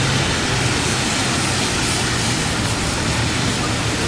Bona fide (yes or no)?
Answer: yes